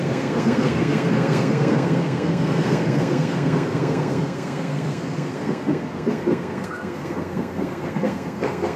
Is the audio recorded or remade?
remade